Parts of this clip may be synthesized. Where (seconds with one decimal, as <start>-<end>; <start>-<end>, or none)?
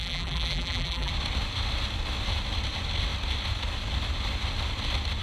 0.0-1.1